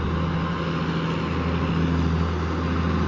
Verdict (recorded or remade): recorded